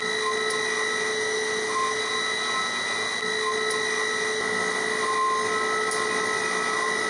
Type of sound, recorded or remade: recorded